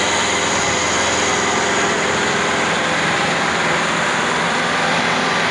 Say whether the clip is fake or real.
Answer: real